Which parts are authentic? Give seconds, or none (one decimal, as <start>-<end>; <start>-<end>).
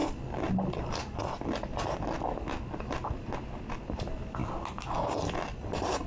0.0-6.1